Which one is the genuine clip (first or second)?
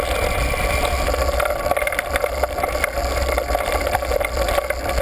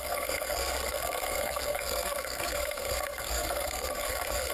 first